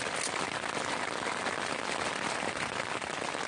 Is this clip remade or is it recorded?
recorded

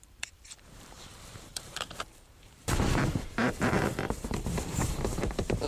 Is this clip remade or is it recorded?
remade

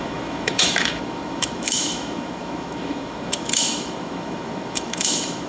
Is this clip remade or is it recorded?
remade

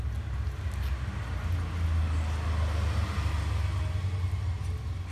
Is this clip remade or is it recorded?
recorded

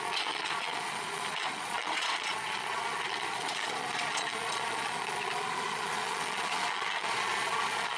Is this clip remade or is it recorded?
remade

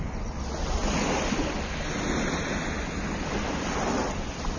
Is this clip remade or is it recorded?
recorded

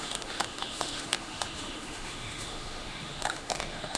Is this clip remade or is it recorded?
remade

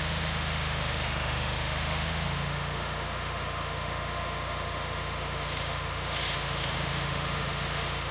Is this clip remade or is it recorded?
remade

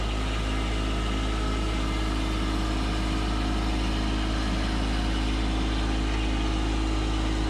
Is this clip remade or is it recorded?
recorded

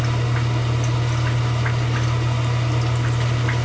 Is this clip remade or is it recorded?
recorded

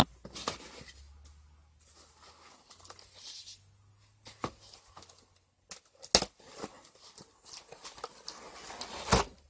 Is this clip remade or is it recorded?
recorded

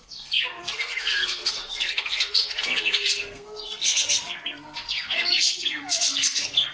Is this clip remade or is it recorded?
remade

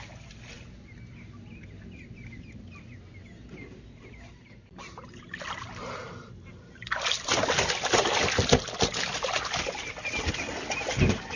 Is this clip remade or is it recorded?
recorded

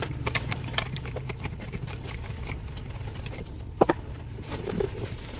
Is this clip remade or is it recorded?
remade